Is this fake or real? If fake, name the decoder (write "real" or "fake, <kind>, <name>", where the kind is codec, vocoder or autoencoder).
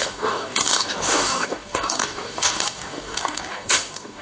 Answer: fake, codec, DAC